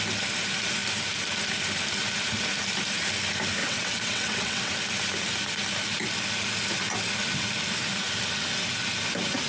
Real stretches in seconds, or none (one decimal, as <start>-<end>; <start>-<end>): 0.0-3.6; 4.7-9.5